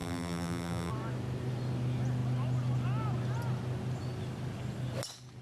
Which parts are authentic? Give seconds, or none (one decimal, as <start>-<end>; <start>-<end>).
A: 0.9-5.4